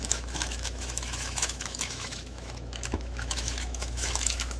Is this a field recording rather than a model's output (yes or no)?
no